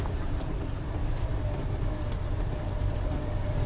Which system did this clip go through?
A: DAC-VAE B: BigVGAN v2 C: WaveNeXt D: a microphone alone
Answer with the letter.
B